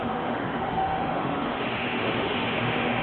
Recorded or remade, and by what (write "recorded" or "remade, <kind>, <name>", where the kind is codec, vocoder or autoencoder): remade, autoencoder, DAC-VAE